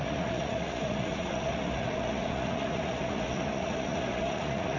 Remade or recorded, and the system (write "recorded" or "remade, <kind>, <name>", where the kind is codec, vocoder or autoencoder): remade, vocoder, Vocos